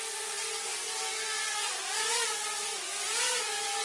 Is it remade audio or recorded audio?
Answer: recorded